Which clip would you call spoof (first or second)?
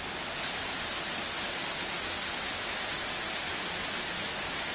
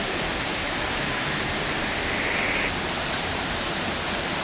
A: second